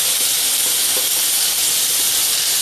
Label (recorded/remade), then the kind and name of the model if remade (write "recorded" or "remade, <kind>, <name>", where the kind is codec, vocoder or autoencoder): recorded